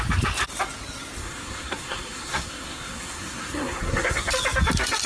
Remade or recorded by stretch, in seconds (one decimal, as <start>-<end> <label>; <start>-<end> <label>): 0.0-1.2 recorded; 1.2-4.3 remade; 4.3-5.1 recorded